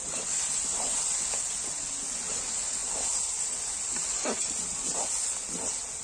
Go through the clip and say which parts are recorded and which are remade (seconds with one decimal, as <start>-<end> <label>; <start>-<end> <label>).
0.0-6.0 recorded